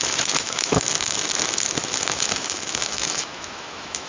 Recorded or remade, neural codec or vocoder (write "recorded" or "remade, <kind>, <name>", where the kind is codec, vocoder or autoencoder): remade, autoencoder, DAC-VAE